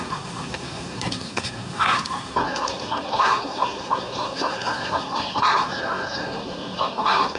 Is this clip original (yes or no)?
no